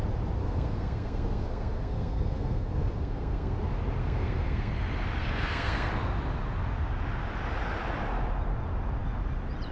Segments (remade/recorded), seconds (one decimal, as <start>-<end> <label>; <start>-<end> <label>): 0.0-0.4 recorded; 0.4-3.6 remade; 3.6-4.0 recorded; 4.0-4.7 remade; 4.7-5.2 recorded; 5.2-5.9 remade; 5.9-9.7 recorded